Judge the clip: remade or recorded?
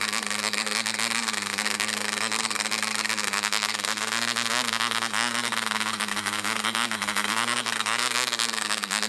remade